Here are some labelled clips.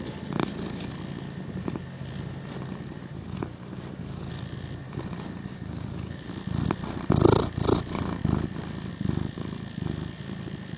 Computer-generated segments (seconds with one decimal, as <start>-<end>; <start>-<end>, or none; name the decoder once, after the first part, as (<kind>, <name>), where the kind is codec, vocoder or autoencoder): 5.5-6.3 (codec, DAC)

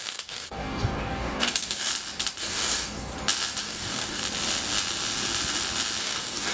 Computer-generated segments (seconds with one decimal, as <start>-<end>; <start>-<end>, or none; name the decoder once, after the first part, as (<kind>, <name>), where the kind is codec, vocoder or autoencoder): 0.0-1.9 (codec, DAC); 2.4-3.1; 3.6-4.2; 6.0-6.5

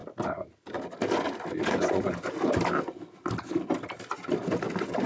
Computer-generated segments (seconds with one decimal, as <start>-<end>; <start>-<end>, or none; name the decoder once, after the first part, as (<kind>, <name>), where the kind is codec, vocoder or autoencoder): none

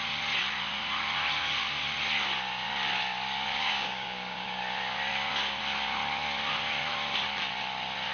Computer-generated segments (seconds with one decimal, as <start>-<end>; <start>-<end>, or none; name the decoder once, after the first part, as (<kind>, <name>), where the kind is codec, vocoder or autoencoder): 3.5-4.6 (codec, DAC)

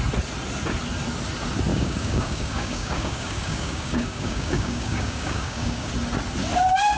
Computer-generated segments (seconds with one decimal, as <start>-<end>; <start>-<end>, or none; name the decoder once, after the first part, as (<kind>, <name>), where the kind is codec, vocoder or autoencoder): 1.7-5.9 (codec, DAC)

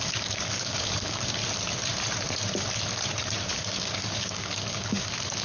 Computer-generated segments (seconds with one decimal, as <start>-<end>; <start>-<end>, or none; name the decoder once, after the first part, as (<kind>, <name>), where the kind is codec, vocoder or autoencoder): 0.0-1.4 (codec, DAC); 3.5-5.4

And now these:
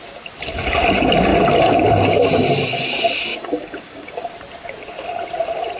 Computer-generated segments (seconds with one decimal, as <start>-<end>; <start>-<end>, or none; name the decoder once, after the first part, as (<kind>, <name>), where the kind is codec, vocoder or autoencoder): 3.3-4.3 (codec, DAC)

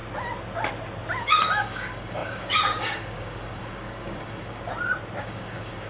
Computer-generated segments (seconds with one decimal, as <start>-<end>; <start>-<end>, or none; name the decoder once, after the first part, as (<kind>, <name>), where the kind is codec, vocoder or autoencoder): 1.2-4.7 (codec, DAC); 5.2-5.9